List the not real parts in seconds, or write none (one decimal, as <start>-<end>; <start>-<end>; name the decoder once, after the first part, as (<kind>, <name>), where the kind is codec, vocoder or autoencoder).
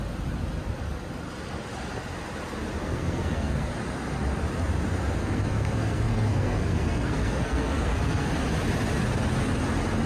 2.8-3.7 (codec, SNAC); 5.2-8.3